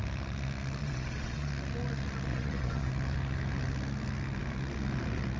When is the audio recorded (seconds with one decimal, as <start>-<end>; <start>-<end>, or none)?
0.0-0.8; 1.5-2.3; 2.9-5.4